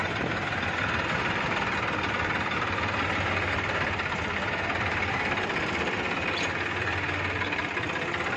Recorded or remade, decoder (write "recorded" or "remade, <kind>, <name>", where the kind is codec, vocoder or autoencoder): remade, vocoder, BigVGAN v2